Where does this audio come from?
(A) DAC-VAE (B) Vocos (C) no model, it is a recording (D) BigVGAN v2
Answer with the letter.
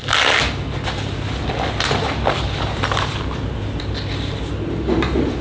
C